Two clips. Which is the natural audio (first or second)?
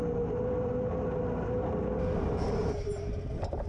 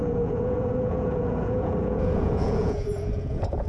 first